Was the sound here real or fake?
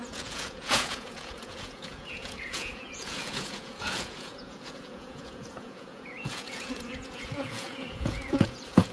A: fake